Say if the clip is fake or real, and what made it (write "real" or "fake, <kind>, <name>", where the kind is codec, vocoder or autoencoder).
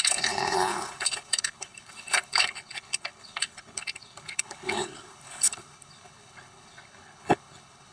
fake, codec, HILCodec